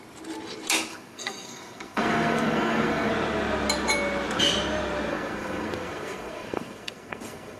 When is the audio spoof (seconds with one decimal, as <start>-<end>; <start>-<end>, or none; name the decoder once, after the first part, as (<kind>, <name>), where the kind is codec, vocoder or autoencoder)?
0.9-3.1 (codec, SNAC); 5.1-7.6